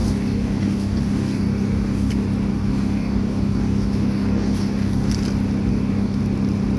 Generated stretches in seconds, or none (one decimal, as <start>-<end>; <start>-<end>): 0.0-2.1; 2.5-5.1; 5.7-6.2

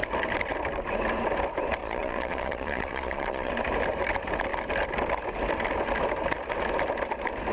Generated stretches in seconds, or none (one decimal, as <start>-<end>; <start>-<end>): 1.8-3.5

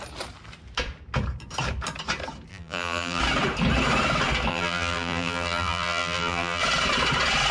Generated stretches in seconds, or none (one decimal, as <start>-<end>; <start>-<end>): 2.5-3.2; 4.5-6.6

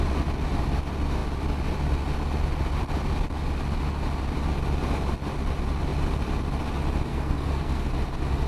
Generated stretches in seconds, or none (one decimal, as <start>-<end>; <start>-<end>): 7.1-7.9

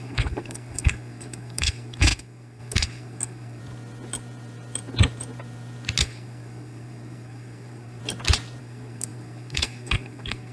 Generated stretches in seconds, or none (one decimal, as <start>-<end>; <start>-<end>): 0.0-3.6; 6.0-8.0; 8.6-10.5

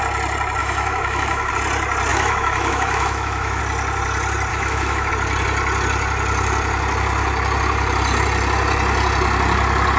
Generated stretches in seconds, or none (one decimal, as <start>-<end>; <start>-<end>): 0.6-1.5; 2.1-3.6; 4.5-5.1